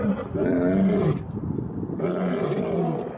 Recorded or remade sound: recorded